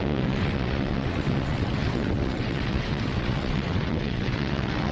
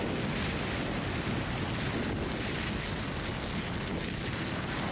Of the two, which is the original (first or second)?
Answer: second